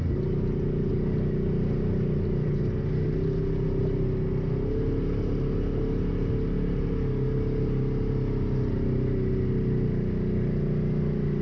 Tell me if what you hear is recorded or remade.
recorded